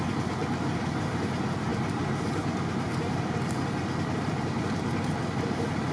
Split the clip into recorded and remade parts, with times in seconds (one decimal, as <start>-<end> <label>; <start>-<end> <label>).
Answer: 0.0-5.9 recorded